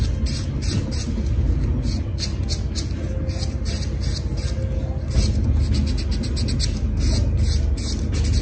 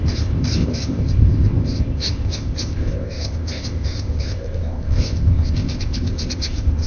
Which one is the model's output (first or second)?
second